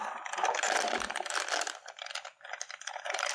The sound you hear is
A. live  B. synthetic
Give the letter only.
A